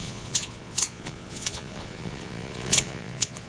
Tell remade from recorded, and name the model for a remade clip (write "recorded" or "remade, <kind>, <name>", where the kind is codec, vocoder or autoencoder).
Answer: remade, vocoder, Vocos